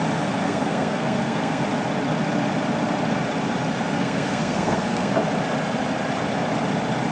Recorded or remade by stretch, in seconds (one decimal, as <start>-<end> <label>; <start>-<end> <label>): 0.0-0.4 recorded; 0.4-1.6 remade; 1.6-3.9 recorded; 3.9-5.1 remade; 5.1-7.1 recorded